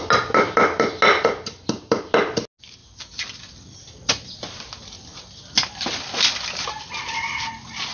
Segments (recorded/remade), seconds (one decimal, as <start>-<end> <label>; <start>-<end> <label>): 0.0-7.9 recorded